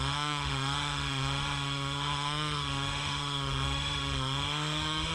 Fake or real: fake